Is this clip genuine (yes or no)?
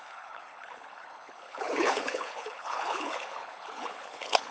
no